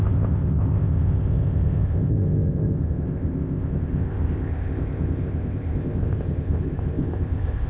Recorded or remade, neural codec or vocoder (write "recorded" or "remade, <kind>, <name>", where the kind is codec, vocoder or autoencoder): remade, codec, ZipCodec